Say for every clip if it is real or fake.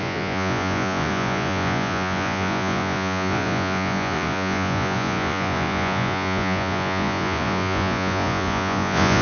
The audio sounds fake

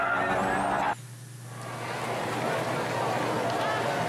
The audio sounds real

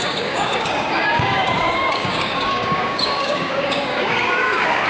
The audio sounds fake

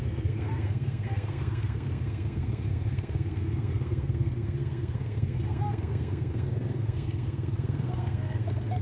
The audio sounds fake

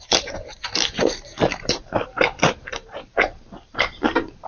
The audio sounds fake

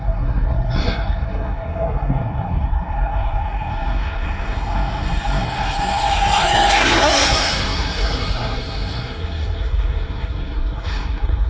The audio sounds fake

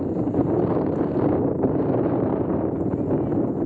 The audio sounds real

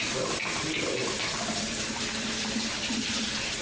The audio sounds real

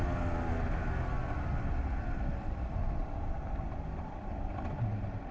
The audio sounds real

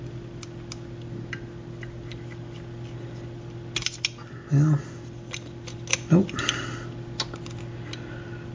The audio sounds real